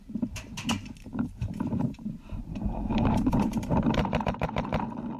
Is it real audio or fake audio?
fake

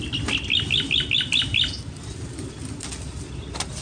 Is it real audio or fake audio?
real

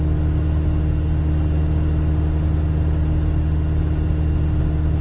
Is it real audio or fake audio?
real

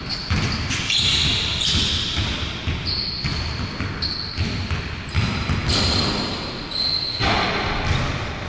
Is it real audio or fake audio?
real